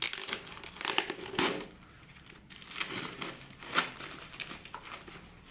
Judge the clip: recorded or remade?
recorded